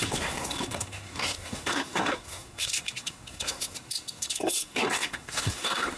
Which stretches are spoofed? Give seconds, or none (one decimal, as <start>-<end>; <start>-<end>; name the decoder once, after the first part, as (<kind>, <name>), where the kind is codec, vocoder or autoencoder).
0.0-6.0 (codec, SNAC)